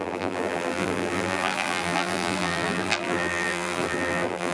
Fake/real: fake